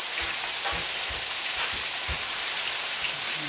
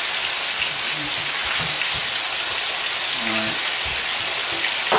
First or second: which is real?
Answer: second